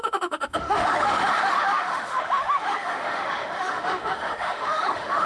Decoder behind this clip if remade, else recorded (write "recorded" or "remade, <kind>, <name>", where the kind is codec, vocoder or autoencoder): remade, autoencoder, DAC-VAE